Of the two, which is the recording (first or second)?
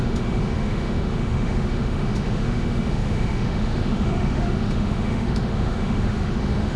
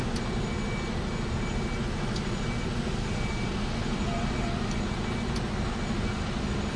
second